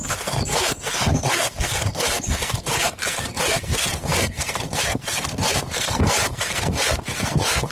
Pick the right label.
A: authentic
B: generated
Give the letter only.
B